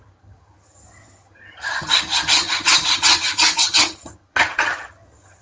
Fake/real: fake